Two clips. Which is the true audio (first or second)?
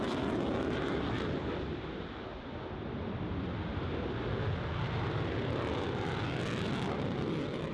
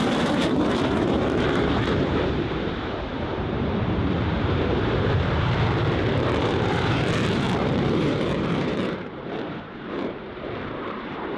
first